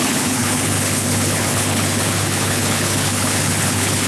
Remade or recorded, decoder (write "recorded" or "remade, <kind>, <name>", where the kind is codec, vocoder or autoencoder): remade, codec, HILCodec